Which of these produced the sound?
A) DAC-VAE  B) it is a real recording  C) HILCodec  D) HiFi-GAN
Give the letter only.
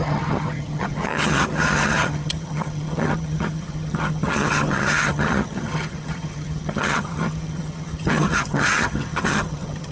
D